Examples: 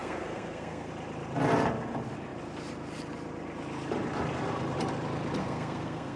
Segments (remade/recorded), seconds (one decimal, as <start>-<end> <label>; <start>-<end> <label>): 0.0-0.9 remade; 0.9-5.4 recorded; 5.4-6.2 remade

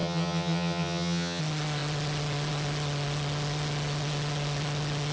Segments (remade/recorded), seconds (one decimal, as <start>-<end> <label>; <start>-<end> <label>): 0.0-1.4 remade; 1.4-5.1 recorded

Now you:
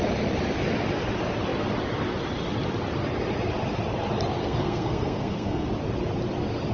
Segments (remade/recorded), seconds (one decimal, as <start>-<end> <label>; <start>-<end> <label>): 0.0-4.4 recorded; 4.4-5.7 remade; 5.7-6.7 recorded